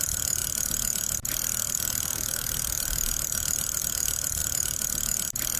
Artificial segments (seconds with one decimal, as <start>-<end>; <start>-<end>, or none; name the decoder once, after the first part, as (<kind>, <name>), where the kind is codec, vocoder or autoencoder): none